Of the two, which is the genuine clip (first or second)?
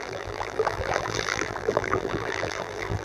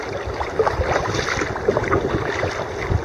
second